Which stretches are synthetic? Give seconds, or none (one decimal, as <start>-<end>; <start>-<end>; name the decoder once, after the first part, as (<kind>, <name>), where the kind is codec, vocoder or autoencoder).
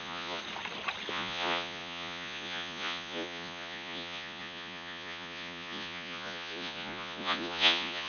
0.0-0.4 (vocoder, Vocos); 1.1-8.1